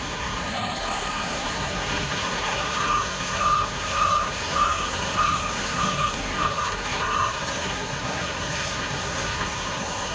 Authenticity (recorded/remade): remade